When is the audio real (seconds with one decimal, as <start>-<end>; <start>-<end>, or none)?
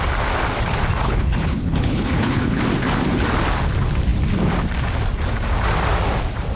0.0-1.0; 2.6-6.6